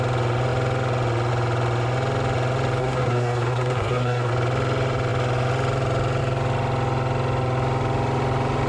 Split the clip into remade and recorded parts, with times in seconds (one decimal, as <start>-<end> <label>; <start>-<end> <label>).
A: 0.0-2.8 recorded; 2.8-4.3 remade; 4.3-8.7 recorded